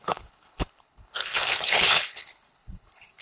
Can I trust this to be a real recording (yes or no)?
no